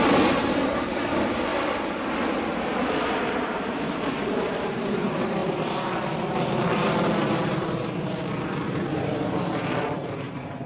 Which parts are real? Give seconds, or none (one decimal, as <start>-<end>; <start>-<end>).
1.5-3.2